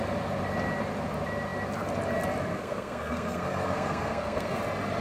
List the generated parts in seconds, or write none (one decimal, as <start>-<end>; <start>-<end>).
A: 2.5-4.6